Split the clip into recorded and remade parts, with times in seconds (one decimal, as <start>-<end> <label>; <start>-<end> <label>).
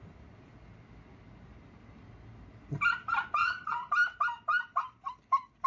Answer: 0.0-3.4 recorded; 3.4-3.9 remade; 3.9-5.7 recorded